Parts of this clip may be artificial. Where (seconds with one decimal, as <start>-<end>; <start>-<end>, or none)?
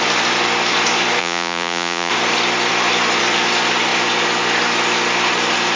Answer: 1.2-2.1